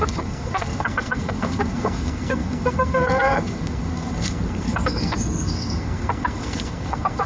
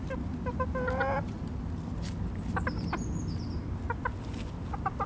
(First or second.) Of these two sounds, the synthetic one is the first